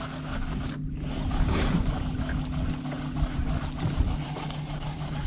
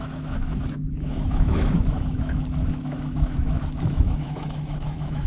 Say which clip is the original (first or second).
first